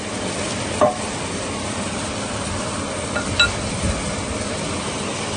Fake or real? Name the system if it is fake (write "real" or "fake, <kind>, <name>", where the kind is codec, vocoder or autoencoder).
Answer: fake, vocoder, BigVGAN v2